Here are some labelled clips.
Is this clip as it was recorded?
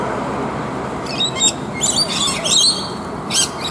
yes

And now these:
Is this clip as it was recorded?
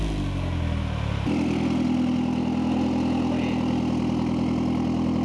yes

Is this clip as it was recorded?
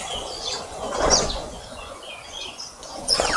no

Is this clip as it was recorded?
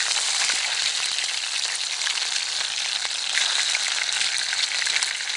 yes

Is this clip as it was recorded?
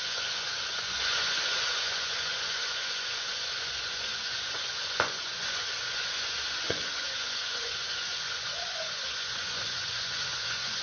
no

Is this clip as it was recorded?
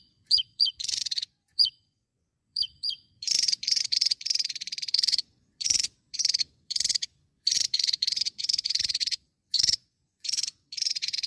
no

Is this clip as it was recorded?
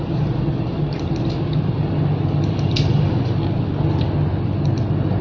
yes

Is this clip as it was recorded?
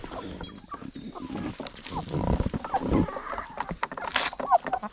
yes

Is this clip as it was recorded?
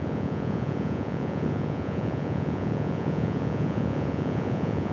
no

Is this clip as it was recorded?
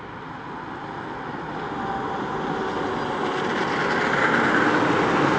yes